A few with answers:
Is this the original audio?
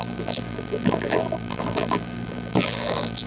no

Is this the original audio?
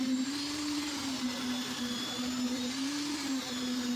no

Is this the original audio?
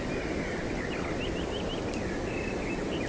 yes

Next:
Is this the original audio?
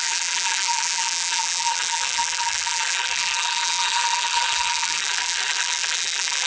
no